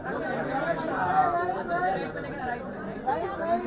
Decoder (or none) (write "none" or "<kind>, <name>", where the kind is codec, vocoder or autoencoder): vocoder, BigVGAN v2